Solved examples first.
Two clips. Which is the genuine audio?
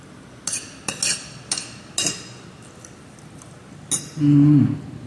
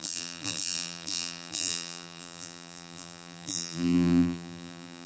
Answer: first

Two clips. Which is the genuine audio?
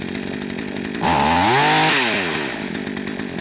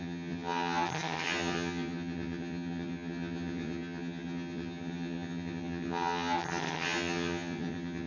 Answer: first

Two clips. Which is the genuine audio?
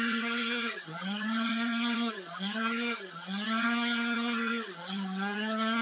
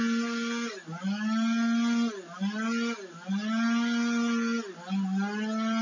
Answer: second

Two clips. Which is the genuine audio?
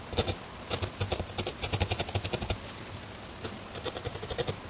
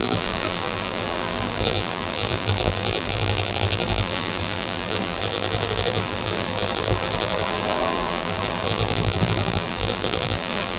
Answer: first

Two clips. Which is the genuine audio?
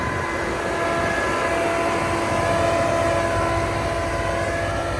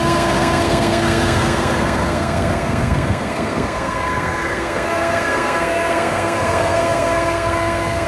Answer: first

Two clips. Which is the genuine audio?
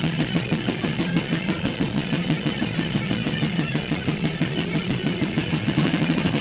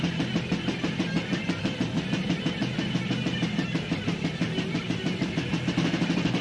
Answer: second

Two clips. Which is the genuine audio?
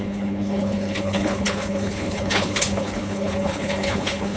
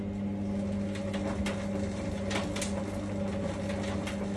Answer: second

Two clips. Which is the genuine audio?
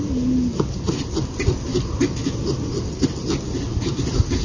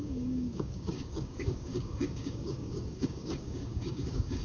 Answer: first